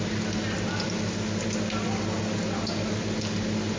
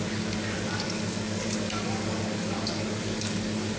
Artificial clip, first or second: second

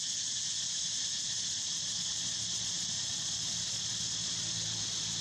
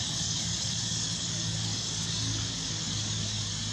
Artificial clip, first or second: second